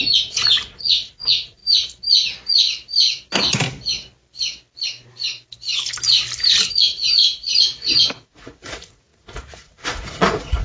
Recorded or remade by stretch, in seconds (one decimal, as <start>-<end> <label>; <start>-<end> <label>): 0.0-1.6 remade; 1.6-6.7 recorded; 6.7-7.2 remade; 7.2-7.8 recorded; 7.8-10.6 remade